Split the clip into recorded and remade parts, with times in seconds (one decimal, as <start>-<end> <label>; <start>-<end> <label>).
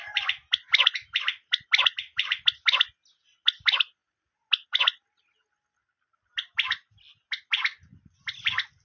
0.0-7.7 recorded; 7.7-8.3 remade; 8.3-8.8 recorded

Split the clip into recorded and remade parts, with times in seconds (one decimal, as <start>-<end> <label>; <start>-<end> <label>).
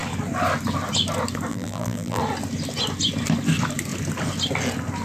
0.0-1.5 recorded; 1.5-2.2 remade; 2.2-5.0 recorded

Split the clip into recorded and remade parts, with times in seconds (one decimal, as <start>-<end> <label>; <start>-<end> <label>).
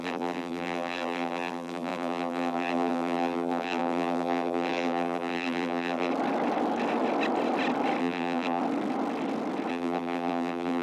0.0-6.1 remade; 6.1-8.0 recorded; 8.0-8.6 remade; 8.6-9.7 recorded; 9.7-10.8 remade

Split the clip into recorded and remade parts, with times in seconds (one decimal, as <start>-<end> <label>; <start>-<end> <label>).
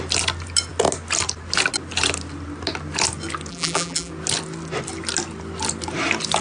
0.0-3.5 recorded; 3.5-4.1 remade; 4.1-6.4 recorded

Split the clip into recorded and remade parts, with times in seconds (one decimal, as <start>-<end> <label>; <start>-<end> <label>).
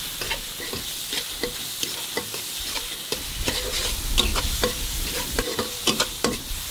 0.0-4.3 recorded; 4.3-6.7 remade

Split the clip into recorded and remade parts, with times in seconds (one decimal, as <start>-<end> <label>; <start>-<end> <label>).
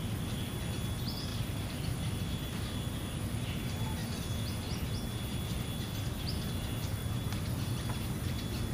0.0-1.3 recorded; 1.3-2.1 remade; 2.1-7.0 recorded; 7.0-7.9 remade; 7.9-8.7 recorded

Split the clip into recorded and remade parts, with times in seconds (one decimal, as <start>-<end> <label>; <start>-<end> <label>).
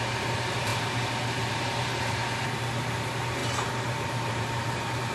0.0-0.7 remade; 0.7-1.5 recorded; 1.5-2.2 remade; 2.2-2.9 recorded; 2.9-5.1 remade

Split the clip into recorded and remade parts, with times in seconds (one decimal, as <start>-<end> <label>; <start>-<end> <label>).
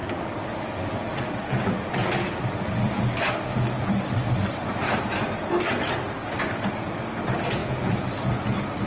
0.0-3.3 remade; 3.3-7.6 recorded; 7.6-8.1 remade; 8.1-8.9 recorded